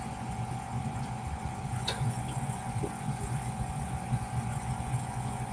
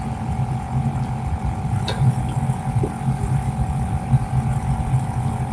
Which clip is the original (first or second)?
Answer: second